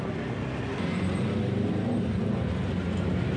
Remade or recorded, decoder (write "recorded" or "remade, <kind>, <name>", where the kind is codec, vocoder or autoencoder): recorded